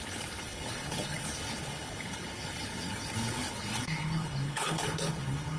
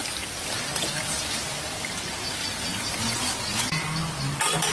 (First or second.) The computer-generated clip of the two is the first